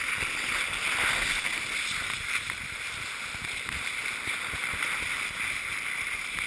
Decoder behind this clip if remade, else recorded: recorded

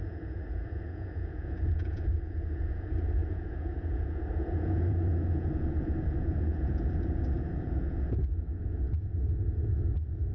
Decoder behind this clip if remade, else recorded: remade, vocoder, Vocos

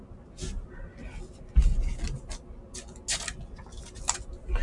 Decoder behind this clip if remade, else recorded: recorded